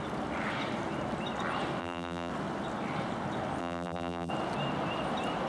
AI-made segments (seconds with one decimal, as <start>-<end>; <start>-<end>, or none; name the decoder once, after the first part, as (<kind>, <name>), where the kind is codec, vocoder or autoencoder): 1.8-2.3 (vocoder, BigVGAN v2); 3.6-4.3